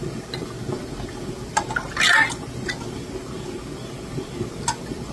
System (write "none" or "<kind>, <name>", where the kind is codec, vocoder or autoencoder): none